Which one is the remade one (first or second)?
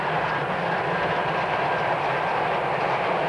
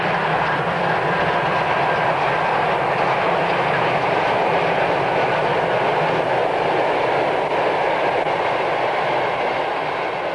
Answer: first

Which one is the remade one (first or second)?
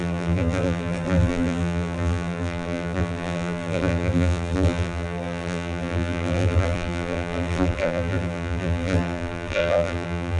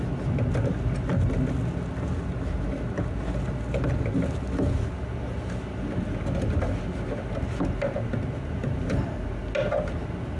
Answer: first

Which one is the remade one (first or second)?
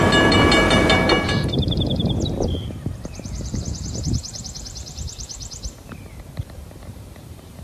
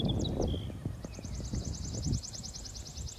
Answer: first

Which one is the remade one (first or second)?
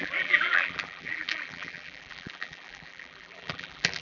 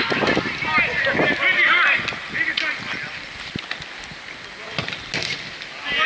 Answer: first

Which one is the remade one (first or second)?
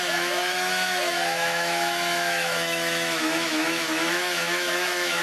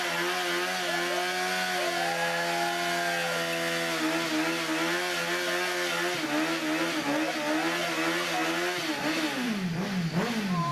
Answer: first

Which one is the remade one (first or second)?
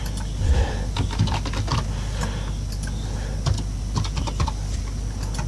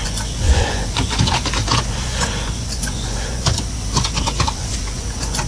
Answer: second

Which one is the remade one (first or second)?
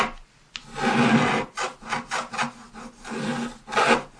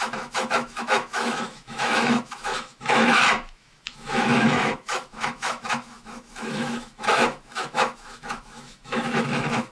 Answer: second